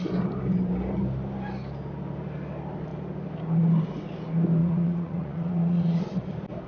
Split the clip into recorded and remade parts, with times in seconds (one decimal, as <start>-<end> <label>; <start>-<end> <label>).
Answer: 0.0-4.6 recorded; 4.6-6.0 remade; 6.0-6.7 recorded